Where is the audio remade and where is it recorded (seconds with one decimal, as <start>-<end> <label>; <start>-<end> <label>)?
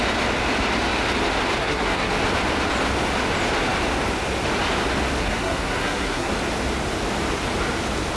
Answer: 0.0-1.6 recorded; 1.6-2.1 remade; 2.1-5.2 recorded; 5.2-6.3 remade; 6.3-8.2 recorded